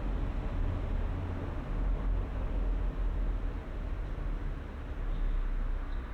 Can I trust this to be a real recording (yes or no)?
yes